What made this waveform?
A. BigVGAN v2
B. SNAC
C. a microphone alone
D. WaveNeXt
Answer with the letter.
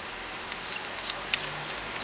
C